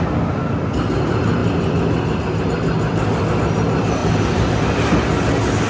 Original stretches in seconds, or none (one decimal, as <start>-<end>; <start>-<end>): 0.0-4.0; 4.6-5.7